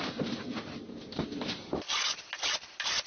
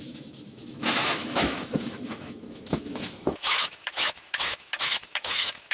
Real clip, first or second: first